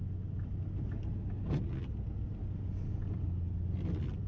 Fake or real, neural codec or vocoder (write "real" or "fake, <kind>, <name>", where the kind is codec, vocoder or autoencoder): real